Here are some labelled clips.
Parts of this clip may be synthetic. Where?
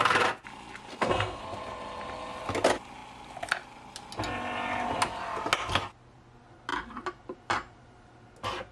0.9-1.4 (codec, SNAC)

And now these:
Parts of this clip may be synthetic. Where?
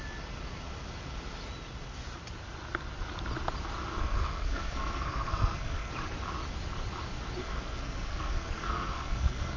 4.0-5.9 (codec, SNAC); 7.4-9.6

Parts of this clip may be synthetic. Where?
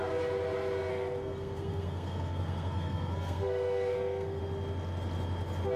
0.9-4.4 (codec, SNAC)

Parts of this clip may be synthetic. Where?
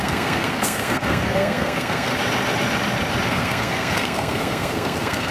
0.0-2.1 (codec, SNAC); 3.3-5.3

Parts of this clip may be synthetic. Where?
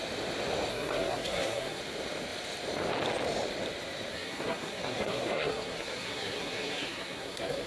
0.7-1.8 (codec, SNAC); 4.1-7.7